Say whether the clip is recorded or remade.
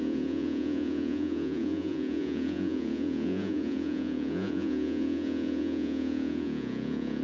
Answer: remade